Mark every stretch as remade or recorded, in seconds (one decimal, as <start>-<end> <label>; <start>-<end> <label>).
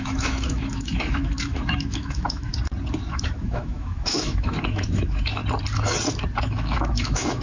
0.0-2.5 remade; 2.5-3.1 recorded; 3.1-5.4 remade; 5.4-6.4 recorded; 6.4-7.4 remade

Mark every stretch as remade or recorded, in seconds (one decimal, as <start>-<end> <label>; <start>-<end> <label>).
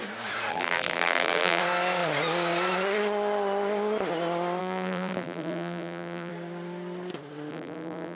0.0-0.5 recorded; 0.5-1.6 remade; 1.6-4.6 recorded; 4.6-6.3 remade; 6.3-7.5 recorded; 7.5-8.2 remade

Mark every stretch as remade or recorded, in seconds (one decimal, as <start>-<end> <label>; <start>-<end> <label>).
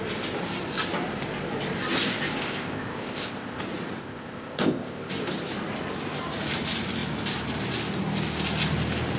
0.0-2.4 recorded; 2.4-3.6 remade; 3.6-4.0 recorded; 4.0-5.1 remade; 5.1-9.2 recorded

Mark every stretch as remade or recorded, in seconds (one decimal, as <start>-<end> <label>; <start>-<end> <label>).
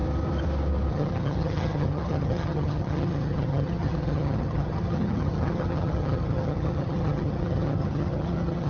0.0-0.9 recorded; 0.9-8.7 remade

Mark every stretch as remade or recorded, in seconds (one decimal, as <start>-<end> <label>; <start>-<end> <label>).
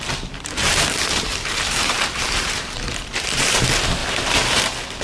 0.0-0.6 recorded; 0.6-3.6 remade; 3.6-4.0 recorded; 4.0-4.6 remade; 4.6-5.0 recorded